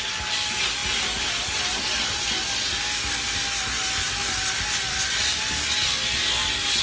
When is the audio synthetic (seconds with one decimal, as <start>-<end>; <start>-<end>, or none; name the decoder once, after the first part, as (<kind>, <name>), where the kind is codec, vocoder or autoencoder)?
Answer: none